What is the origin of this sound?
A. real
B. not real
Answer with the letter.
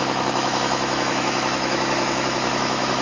B